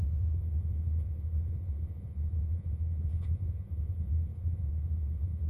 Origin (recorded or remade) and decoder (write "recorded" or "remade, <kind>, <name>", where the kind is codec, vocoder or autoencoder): remade, vocoder, Vocos